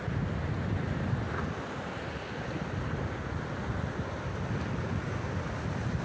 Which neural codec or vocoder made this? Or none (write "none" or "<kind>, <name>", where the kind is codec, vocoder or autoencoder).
none